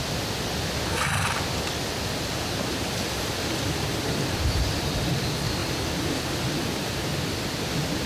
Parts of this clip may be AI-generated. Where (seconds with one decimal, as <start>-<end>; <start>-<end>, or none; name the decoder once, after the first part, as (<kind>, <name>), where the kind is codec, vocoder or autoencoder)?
2.3-4.9 (vocoder, BigVGAN v2); 5.6-7.1